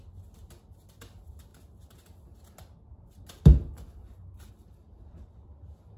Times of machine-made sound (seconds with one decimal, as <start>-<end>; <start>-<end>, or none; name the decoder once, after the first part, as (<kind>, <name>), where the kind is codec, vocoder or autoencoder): none